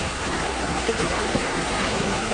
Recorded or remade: remade